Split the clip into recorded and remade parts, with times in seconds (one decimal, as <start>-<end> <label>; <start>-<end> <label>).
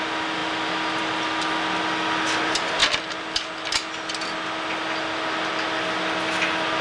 0.0-6.8 recorded